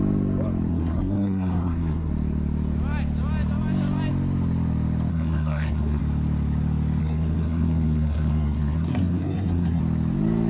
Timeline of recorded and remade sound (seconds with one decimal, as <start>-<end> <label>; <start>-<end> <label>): 0.0-0.7 recorded; 0.7-2.1 remade; 2.1-5.1 recorded; 5.1-6.0 remade; 6.0-7.0 recorded; 7.0-9.8 remade; 9.8-10.5 recorded